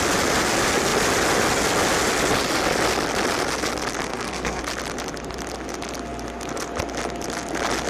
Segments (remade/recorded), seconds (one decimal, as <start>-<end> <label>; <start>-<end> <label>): 0.0-4.1 recorded; 4.1-4.6 remade; 4.6-7.9 recorded